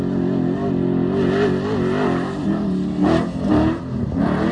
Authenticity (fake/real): real